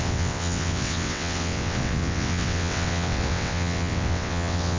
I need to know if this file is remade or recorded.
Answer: remade